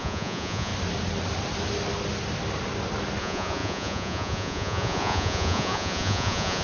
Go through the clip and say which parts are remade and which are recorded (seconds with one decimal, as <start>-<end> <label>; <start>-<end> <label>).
0.0-0.7 remade; 0.7-3.2 recorded; 3.2-6.6 remade